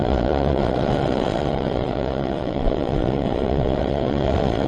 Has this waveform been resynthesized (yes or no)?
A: yes